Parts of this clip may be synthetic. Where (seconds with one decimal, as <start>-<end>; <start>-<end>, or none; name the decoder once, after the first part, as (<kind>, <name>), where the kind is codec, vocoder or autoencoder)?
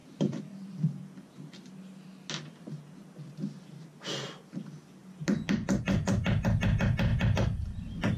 0.0-1.6 (vocoder, BigVGAN v2); 7.1-8.2